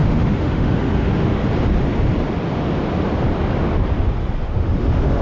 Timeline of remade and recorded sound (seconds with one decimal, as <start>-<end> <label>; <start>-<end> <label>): 0.0-1.4 remade; 1.4-4.5 recorded; 4.5-5.2 remade